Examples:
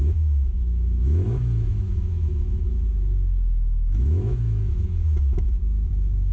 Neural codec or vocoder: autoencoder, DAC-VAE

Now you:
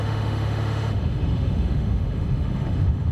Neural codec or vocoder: autoencoder, DAC-VAE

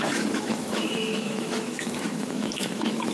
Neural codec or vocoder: autoencoder, DAC-VAE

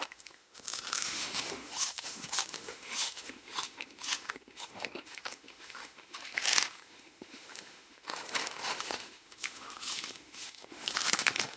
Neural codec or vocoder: autoencoder, DAC-VAE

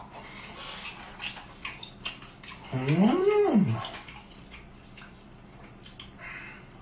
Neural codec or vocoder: none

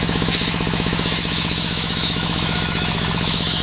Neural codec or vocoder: autoencoder, DAC-VAE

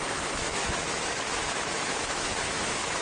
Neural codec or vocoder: autoencoder, DAC-VAE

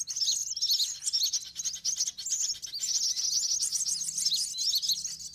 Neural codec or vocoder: none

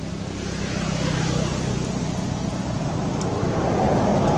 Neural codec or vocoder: none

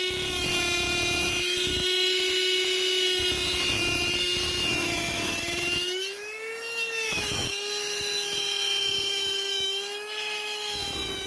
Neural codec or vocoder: autoencoder, DAC-VAE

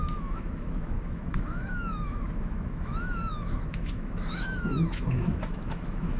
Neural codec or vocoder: autoencoder, DAC-VAE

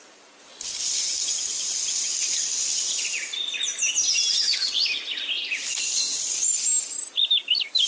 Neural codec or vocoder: none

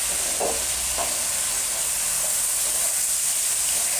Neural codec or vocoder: none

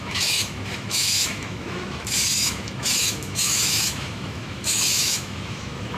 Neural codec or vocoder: autoencoder, DAC-VAE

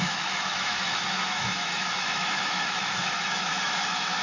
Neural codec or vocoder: autoencoder, DAC-VAE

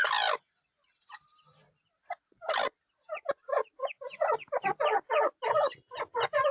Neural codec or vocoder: none